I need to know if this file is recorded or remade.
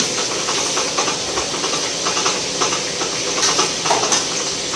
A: recorded